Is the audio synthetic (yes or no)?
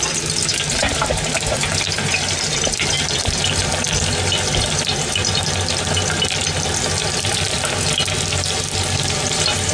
yes